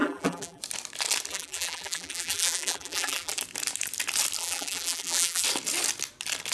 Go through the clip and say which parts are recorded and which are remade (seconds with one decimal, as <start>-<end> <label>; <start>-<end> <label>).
0.0-0.6 remade; 0.6-1.3 recorded; 1.3-3.3 remade; 3.3-4.4 recorded; 4.4-5.4 remade; 5.4-6.5 recorded